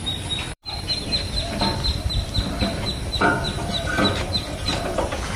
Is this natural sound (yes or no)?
no